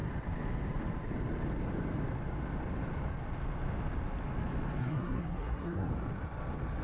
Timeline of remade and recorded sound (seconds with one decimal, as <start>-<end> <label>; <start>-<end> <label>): 0.0-4.8 recorded; 4.8-5.9 remade; 5.9-6.8 recorded